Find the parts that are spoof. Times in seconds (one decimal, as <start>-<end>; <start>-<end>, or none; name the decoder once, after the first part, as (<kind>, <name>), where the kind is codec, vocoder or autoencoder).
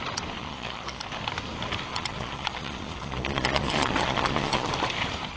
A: 0.4-1.0 (vocoder, Vocos); 1.9-4.7